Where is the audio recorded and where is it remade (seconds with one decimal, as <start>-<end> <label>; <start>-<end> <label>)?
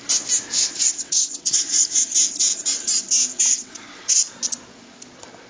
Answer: 0.0-0.5 recorded; 0.5-2.0 remade; 2.0-3.5 recorded; 3.5-4.2 remade; 4.2-5.5 recorded